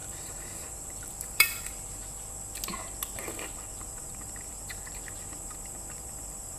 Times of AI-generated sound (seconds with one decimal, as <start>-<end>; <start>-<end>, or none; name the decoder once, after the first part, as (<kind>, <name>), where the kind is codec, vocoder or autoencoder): 0.0-2.0 (vocoder, BigVGAN v2); 3.8-6.6